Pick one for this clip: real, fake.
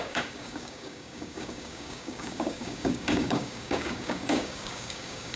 fake